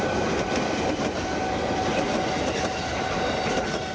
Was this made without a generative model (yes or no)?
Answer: yes